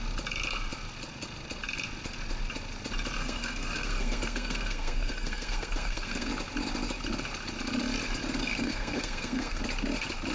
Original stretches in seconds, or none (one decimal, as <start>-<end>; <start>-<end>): 0.0-3.2; 6.3-8.4; 9.6-10.3